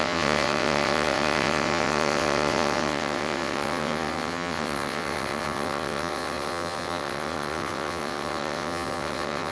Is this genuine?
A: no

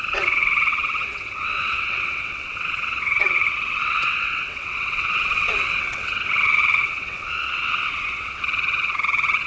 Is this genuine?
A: no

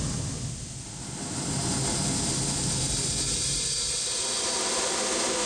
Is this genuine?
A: yes